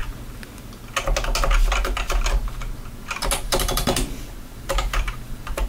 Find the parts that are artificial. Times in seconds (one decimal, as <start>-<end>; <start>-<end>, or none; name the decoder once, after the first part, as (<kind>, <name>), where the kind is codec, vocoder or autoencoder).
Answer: 3.4-5.7 (vocoder, BigVGAN v2)